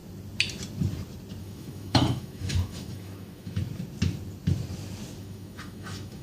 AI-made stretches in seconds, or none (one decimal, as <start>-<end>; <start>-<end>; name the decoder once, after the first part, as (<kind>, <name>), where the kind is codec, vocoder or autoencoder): 1.4-3.6 (autoencoder, DAC-VAE); 5.2-6.2